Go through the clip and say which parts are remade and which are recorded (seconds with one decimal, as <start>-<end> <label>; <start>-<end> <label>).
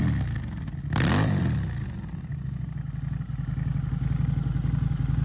0.0-5.2 recorded